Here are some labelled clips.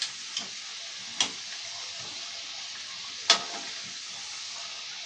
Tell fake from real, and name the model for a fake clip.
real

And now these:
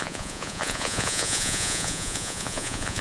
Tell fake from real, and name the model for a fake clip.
fake, vocoder, Vocos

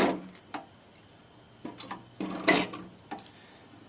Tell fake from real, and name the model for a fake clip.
real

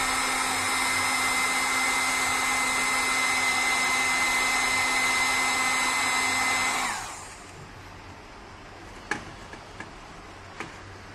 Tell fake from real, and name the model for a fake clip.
real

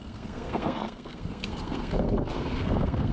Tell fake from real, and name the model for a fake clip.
fake, codec, SNAC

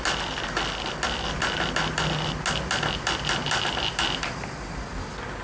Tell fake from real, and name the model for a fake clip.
real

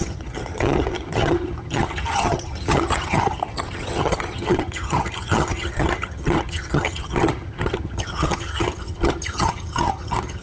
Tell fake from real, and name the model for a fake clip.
fake, vocoder, HiFi-GAN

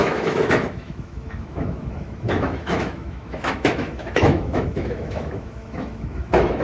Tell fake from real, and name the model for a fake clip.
fake, autoencoder, DAC-VAE